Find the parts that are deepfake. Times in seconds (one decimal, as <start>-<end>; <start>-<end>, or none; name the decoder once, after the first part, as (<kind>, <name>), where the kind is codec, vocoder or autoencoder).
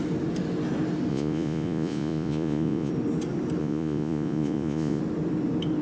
1.1-2.9 (vocoder, Vocos); 3.6-5.0